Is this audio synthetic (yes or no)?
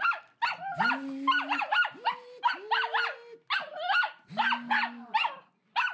no